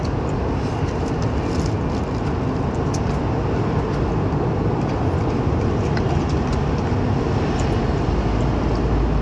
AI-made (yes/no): no